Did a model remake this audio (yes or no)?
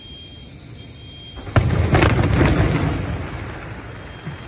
no